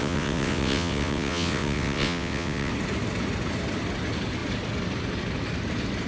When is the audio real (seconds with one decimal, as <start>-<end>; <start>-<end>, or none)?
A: 2.7-6.1